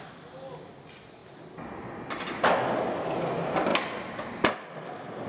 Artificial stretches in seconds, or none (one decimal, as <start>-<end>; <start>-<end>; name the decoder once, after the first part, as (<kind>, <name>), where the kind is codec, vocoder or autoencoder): none